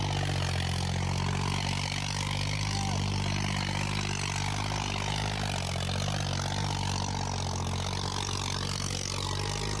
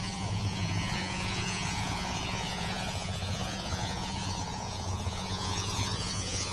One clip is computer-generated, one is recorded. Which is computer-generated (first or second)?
second